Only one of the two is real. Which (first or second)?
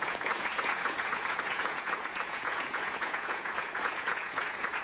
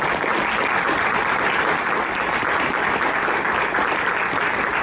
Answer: second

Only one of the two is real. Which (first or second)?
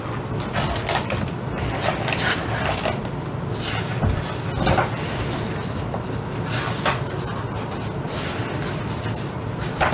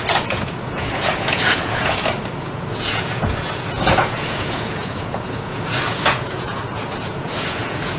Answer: first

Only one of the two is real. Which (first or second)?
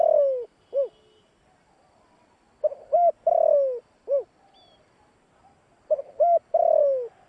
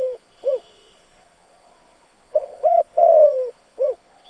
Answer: first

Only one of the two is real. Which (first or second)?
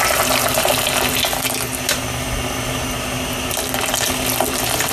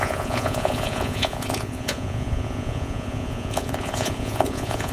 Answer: first